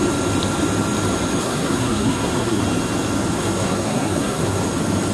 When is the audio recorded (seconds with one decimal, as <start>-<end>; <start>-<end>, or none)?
0.0-1.4; 2.6-3.4; 4.6-5.1